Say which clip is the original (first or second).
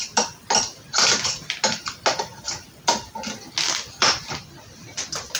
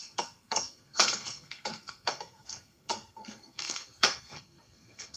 first